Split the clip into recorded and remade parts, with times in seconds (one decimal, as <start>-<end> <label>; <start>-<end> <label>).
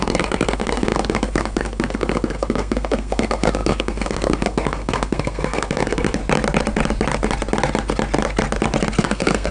0.0-6.2 remade; 6.2-9.0 recorded; 9.0-9.5 remade